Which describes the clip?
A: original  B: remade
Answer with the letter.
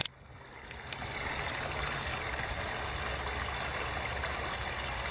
A